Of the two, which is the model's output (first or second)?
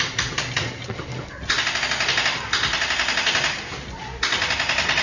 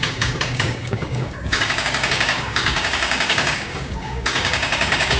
second